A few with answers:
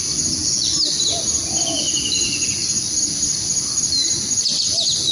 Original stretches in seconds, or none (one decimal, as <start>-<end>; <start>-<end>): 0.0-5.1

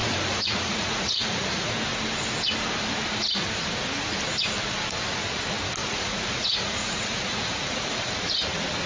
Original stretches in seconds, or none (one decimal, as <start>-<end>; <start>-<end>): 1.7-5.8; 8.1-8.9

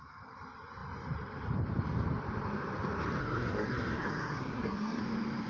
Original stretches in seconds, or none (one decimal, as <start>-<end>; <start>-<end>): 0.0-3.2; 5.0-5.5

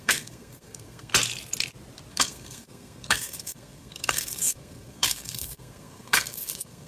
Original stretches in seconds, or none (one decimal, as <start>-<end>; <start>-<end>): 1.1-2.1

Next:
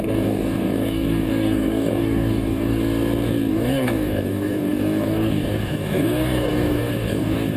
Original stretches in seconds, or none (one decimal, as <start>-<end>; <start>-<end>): 2.8-3.5